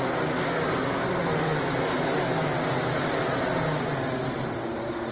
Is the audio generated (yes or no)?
no